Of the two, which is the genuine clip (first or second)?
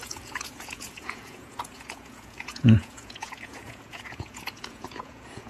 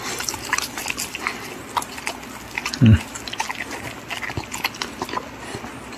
second